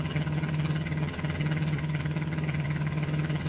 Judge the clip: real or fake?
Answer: fake